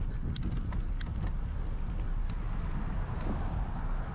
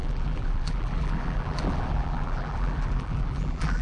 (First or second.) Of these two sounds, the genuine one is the first